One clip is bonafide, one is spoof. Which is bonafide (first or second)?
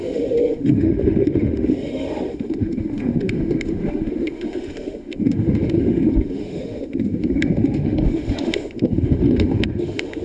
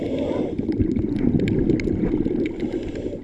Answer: second